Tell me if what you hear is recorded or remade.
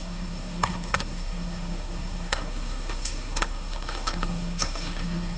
remade